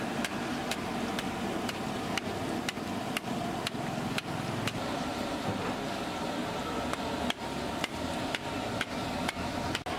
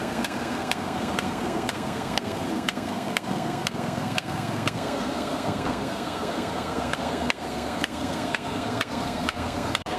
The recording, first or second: first